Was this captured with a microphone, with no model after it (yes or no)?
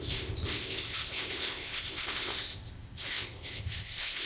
no